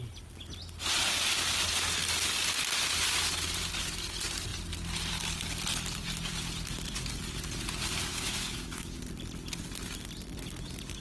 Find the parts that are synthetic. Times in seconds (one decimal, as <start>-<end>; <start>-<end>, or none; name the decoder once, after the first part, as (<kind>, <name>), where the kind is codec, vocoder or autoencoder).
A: 8.1-9.0 (autoencoder, DAC-VAE)